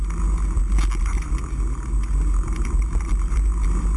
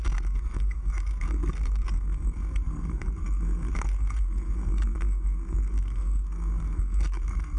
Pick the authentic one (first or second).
first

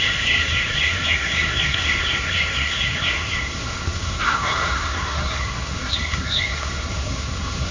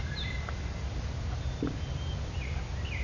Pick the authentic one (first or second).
second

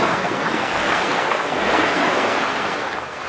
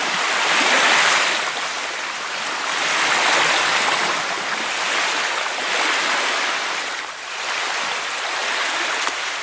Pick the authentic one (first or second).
second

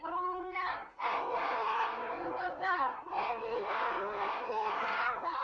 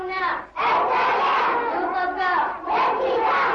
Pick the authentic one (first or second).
second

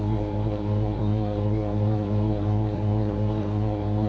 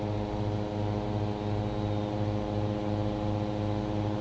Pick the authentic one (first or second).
second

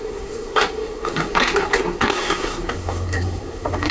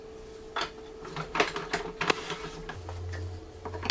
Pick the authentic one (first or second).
second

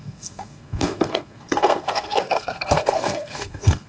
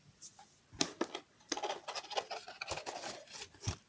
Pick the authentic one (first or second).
second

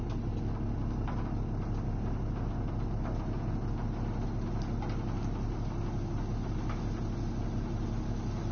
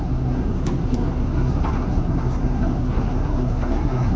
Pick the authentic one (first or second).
first